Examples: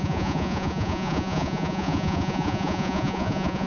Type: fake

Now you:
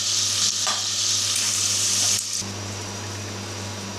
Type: real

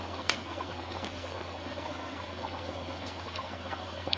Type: fake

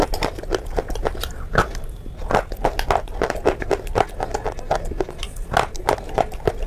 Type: real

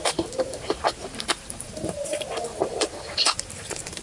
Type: fake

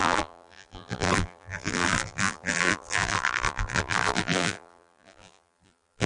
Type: fake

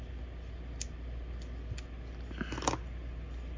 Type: real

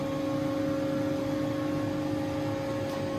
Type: real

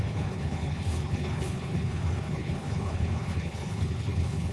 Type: fake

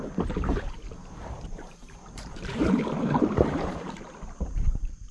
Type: fake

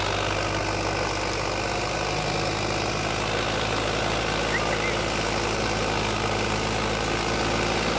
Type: real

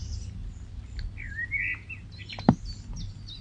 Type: real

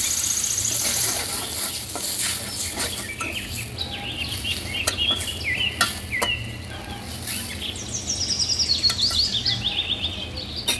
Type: real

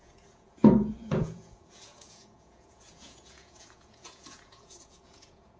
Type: fake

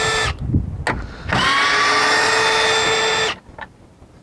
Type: real